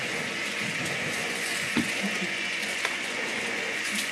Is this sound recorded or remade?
remade